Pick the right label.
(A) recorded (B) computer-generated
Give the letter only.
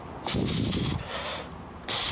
A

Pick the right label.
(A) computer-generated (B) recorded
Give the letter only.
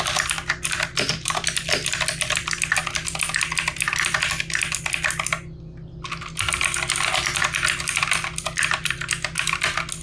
B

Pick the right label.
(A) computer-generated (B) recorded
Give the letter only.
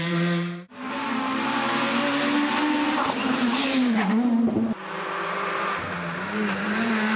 A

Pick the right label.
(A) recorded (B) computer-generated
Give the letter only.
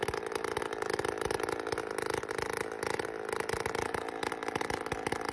A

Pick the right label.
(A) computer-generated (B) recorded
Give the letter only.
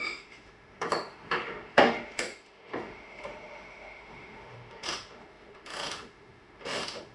A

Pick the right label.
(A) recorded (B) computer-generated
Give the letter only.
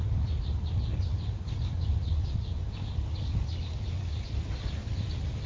A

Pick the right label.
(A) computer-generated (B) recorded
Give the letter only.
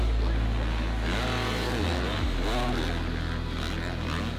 B